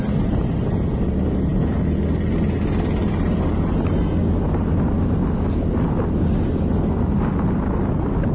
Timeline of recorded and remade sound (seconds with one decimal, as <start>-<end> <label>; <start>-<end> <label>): 0.0-8.3 recorded